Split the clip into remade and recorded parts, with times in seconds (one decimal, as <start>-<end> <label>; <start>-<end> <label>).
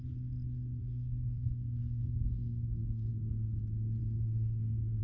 0.0-0.8 recorded; 0.8-3.1 remade; 3.1-4.0 recorded; 4.0-5.0 remade